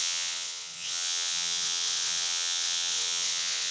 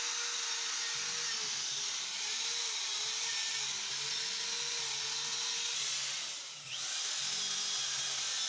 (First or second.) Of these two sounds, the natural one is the second